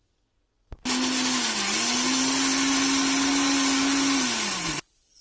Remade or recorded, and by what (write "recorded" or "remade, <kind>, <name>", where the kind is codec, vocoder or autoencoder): recorded